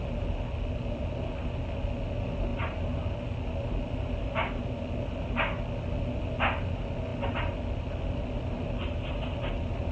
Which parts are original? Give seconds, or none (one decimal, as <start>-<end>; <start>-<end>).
0.0-9.9